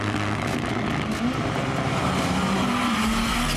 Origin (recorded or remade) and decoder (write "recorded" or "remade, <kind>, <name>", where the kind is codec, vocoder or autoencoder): recorded